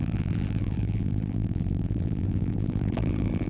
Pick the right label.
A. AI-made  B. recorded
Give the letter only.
A